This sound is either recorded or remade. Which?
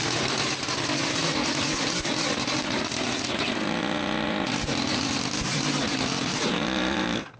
recorded